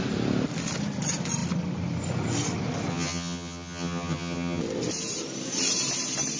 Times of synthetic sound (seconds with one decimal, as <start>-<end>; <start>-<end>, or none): 2.9-4.6